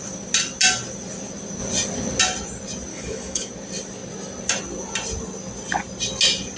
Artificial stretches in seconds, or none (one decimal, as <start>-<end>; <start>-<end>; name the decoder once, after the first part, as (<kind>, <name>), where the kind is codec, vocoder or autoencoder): 2.9-3.5 (autoencoder, DAC-VAE)